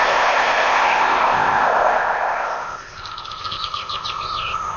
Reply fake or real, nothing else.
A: fake